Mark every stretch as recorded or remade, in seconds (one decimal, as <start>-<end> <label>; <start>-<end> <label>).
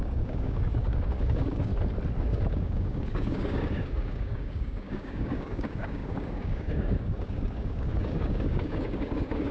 0.0-1.7 remade; 1.7-2.2 recorded; 2.2-9.5 remade